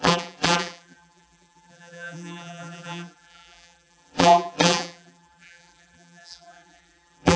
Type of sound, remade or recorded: remade